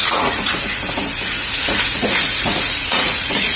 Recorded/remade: remade